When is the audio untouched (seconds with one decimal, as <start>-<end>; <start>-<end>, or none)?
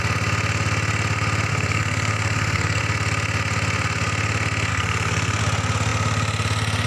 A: 0.0-1.5; 2.8-4.7; 5.4-6.9